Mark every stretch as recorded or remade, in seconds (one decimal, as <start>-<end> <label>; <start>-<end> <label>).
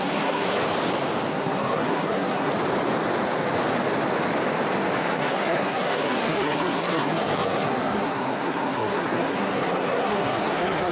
0.0-0.6 remade; 0.6-1.3 recorded; 1.3-2.5 remade; 2.5-5.0 recorded; 5.0-10.9 remade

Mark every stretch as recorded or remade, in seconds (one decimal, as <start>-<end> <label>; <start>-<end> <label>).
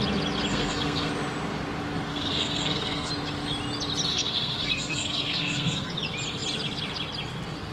0.0-0.5 recorded; 0.5-1.1 remade; 1.1-2.1 recorded; 2.1-3.1 remade; 3.1-4.1 recorded; 4.1-5.9 remade; 5.9-7.7 recorded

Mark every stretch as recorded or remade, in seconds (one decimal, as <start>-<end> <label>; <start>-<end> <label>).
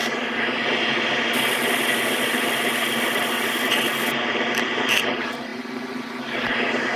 0.0-4.0 recorded; 4.0-7.0 remade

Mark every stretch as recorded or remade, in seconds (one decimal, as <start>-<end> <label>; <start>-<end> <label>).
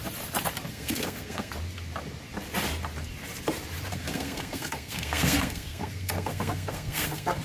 0.0-0.7 recorded; 0.7-1.5 remade; 1.5-3.9 recorded; 3.9-7.4 remade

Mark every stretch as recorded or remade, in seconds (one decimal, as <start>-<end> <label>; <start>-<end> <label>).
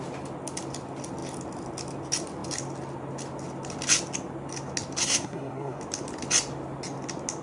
0.0-5.0 recorded; 5.0-5.8 remade; 5.8-7.4 recorded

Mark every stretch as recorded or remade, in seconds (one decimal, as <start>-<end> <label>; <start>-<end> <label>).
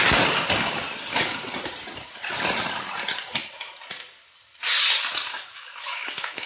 0.0-5.3 recorded; 5.3-6.5 remade